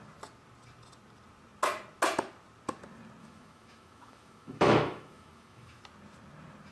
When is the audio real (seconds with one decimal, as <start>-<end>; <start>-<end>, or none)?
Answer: 0.0-3.2; 5.8-6.7